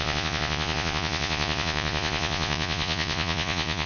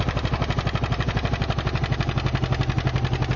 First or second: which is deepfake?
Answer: first